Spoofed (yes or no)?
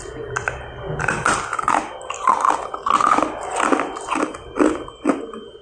no